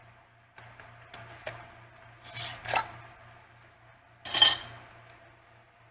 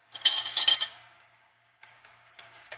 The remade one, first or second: second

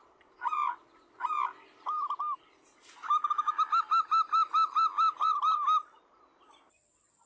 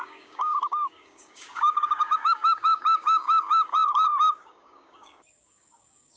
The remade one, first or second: second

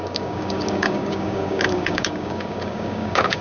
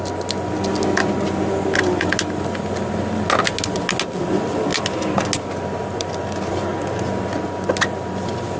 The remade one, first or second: first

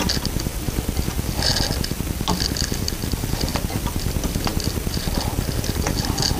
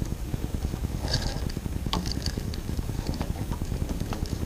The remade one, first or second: second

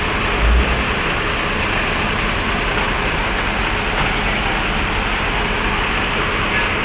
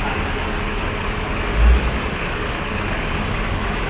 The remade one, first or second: second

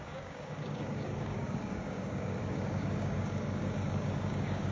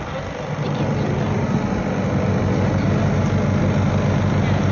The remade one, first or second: first